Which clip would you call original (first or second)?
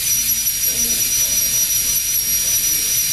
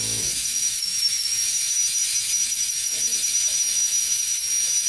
first